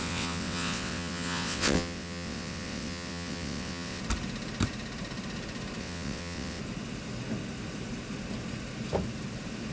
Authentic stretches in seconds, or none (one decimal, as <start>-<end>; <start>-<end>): 4.0-5.8; 6.6-9.7